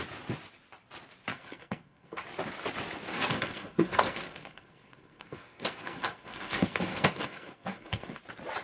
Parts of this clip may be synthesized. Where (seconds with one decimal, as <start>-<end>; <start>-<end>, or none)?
1.3-2.2; 3.1-8.2